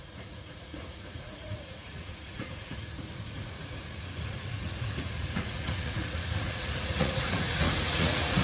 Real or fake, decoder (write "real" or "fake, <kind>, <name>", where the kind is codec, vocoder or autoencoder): fake, vocoder, Vocos